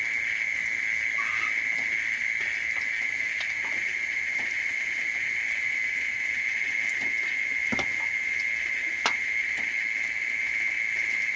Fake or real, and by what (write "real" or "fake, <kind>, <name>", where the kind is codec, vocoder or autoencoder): real